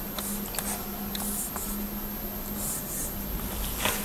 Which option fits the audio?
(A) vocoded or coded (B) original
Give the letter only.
B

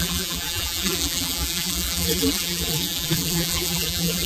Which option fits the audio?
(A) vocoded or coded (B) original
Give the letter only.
A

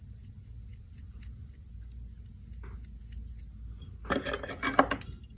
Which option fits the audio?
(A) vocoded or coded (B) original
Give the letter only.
B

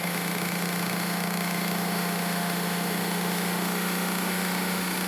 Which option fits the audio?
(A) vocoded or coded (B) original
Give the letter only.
A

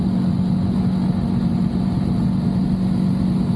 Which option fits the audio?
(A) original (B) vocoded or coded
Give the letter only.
A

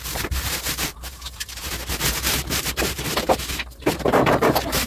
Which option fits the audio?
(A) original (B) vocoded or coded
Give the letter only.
B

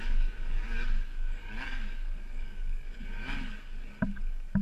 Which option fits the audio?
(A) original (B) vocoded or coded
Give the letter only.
B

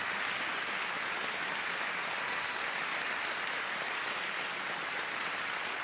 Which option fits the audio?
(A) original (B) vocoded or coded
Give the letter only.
A